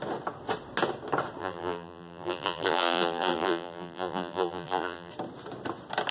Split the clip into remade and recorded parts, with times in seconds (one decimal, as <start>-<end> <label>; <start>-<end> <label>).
0.0-1.4 recorded; 1.4-5.1 remade; 5.1-6.1 recorded